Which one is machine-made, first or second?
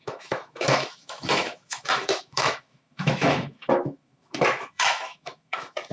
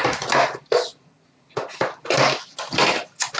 first